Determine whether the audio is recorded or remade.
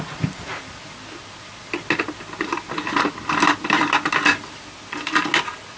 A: recorded